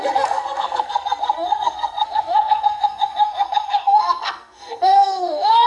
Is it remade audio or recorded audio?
remade